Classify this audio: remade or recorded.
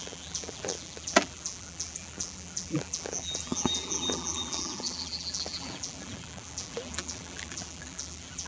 remade